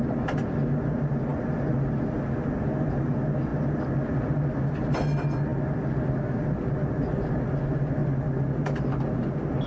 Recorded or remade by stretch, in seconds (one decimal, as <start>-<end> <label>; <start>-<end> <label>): 0.0-9.7 recorded